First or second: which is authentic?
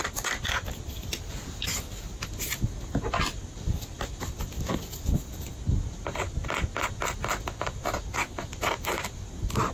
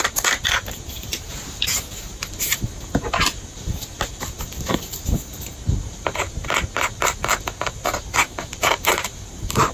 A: first